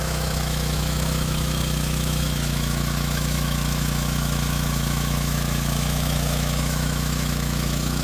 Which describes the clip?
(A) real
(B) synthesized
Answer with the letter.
B